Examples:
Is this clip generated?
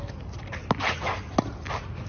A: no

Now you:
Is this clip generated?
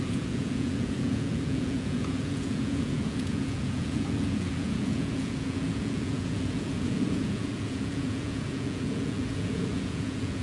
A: yes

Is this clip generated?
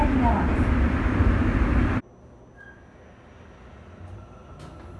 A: no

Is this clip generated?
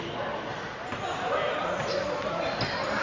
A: no